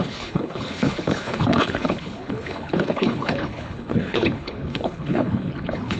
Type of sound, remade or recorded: remade